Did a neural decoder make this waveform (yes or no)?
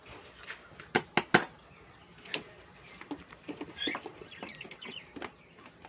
no